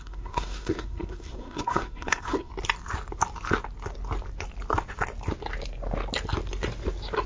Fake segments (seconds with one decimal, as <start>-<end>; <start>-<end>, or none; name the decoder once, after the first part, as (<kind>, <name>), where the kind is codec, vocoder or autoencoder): 0.0-2.5 (codec, SNAC)